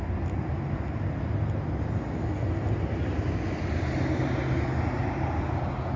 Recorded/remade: recorded